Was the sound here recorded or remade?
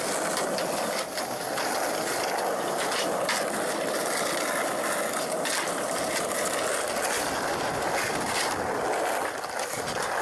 recorded